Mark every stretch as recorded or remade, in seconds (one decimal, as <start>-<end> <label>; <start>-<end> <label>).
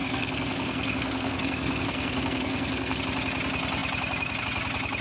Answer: 0.0-3.0 remade; 3.0-5.0 recorded